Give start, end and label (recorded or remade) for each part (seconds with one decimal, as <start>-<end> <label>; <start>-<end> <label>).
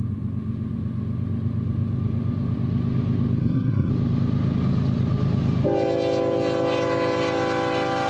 0.0-3.4 recorded; 3.4-3.9 remade; 3.9-8.1 recorded